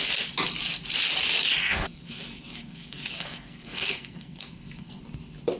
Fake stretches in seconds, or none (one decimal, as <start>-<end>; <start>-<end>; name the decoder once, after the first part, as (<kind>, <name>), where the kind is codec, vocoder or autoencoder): 1.6-5.0 (codec, SNAC)